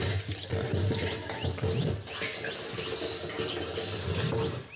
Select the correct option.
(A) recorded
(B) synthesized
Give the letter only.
A